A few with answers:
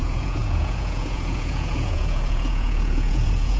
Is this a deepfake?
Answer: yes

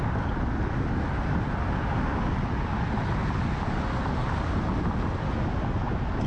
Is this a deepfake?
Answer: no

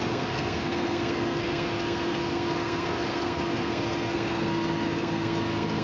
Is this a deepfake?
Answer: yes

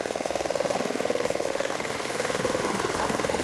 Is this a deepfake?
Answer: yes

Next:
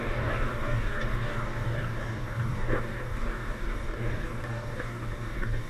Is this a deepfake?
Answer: yes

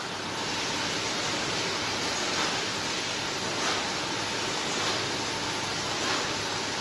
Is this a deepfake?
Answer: no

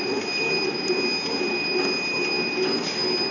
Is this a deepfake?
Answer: no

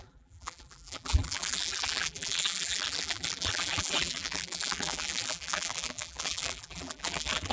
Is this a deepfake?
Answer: yes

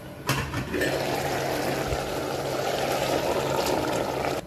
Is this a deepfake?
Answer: no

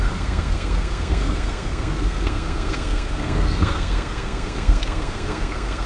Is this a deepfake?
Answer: yes